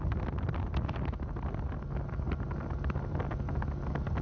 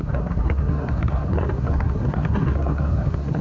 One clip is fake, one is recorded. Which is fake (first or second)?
second